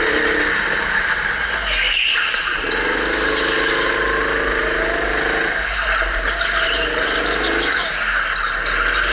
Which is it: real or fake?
real